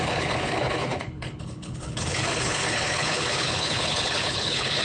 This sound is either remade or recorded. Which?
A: remade